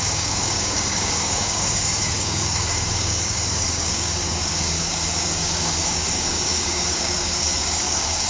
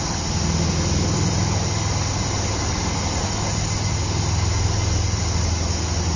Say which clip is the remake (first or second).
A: first